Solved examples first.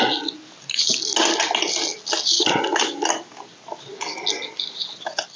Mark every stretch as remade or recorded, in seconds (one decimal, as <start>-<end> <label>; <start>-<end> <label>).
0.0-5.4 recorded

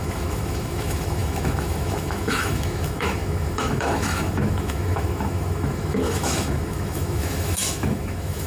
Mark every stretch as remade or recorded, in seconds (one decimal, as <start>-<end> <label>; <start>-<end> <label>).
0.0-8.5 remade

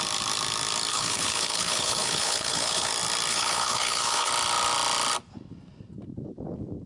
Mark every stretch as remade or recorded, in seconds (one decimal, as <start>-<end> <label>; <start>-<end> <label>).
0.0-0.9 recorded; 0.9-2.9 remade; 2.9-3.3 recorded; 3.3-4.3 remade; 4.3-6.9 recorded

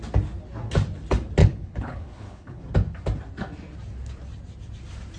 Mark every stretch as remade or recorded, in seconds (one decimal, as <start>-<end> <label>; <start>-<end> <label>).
0.0-1.4 recorded; 1.4-2.6 remade; 2.6-5.2 recorded